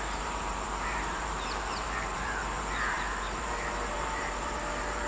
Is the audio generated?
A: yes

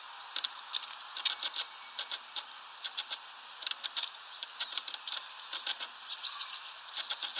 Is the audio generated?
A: no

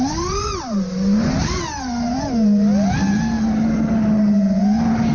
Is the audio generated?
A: no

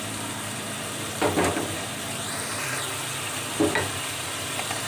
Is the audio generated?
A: yes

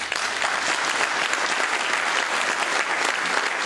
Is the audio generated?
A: no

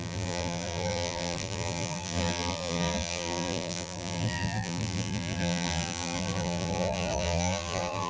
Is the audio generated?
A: yes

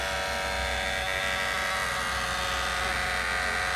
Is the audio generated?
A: no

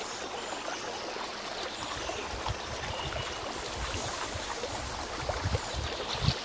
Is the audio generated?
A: no